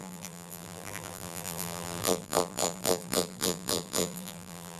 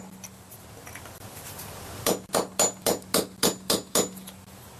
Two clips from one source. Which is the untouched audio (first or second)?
second